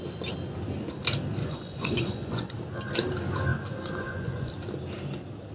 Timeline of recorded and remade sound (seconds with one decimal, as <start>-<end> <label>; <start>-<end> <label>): 0.0-1.4 recorded; 1.4-2.5 remade; 2.5-3.5 recorded; 3.5-4.5 remade; 4.5-5.5 recorded